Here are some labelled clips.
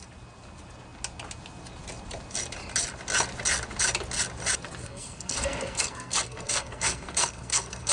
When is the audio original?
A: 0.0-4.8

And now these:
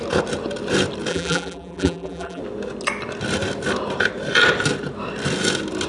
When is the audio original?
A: 0.0-1.1; 2.4-5.9

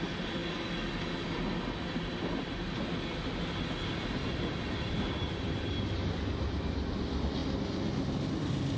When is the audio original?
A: 0.0-8.8

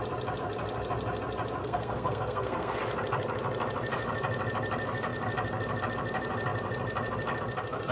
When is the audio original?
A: 0.0-1.6; 2.8-7.9

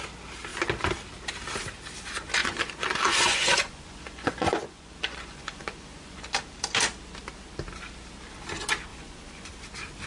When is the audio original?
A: 0.0-2.4; 6.2-8.9; 9.5-10.1